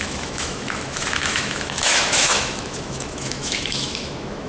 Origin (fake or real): fake